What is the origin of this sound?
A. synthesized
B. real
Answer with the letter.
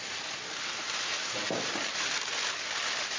B